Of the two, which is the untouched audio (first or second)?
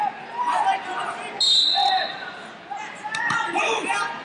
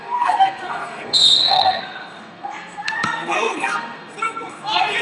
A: first